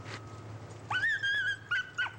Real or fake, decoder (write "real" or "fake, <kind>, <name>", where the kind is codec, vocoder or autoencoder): real